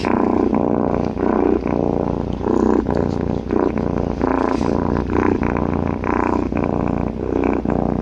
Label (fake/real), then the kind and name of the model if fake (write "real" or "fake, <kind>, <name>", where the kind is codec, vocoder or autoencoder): real